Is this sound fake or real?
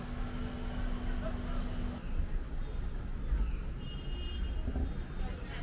real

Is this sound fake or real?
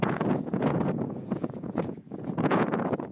fake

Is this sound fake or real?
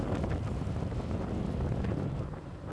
real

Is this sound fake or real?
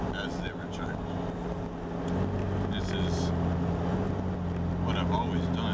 real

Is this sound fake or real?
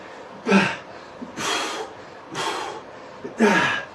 real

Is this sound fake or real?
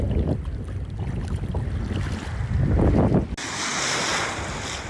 real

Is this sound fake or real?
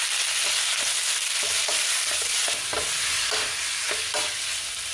real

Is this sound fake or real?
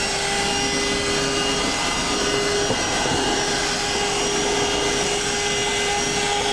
real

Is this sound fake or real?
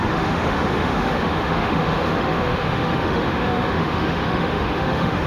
fake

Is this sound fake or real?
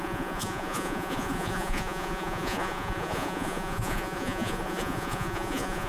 fake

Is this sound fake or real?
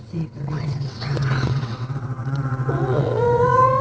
fake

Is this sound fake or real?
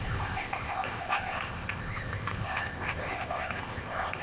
fake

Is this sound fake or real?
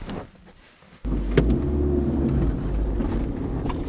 real